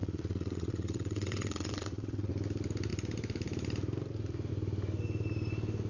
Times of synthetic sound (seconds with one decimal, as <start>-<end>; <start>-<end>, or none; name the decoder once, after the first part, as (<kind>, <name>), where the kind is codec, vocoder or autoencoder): 0.0-2.3 (vocoder, WaveNeXt)